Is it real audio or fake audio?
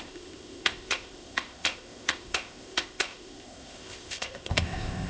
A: fake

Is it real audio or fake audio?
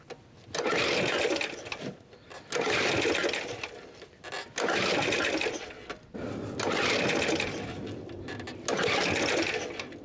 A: real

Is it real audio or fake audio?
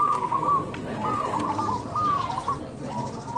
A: real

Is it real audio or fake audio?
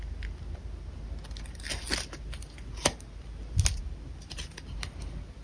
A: real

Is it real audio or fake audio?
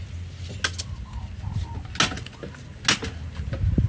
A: real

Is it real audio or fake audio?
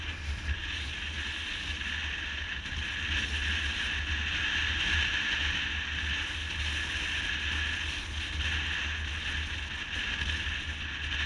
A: real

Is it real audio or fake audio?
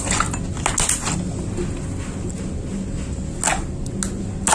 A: real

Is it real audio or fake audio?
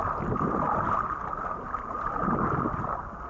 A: real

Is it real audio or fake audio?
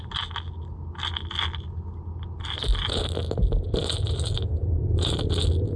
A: real